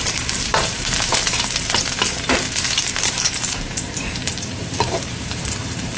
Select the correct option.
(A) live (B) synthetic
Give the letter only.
B